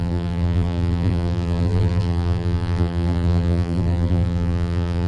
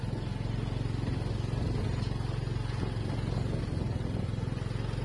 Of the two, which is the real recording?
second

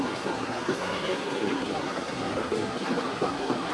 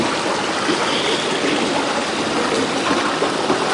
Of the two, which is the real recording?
second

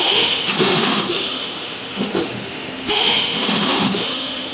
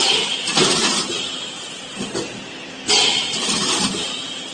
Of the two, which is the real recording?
second